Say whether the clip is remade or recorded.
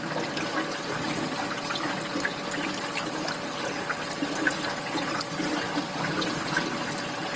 recorded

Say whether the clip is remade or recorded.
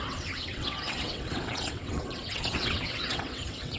remade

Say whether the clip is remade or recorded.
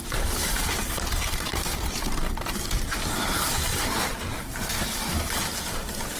remade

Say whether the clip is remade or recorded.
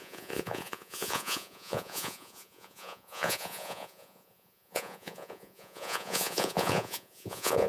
remade